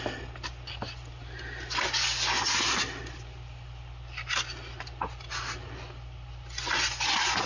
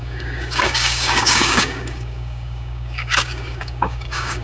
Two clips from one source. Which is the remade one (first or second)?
second